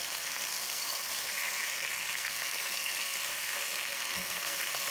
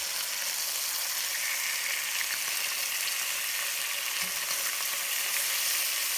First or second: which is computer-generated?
first